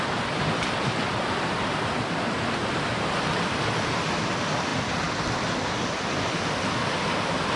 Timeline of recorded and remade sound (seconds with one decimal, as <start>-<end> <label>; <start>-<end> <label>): 0.0-7.6 recorded